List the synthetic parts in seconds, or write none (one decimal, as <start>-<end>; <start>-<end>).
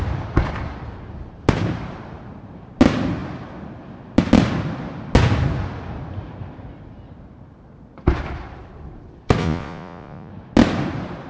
9.4-10.3